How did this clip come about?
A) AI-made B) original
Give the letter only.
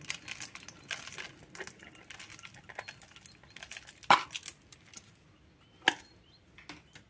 B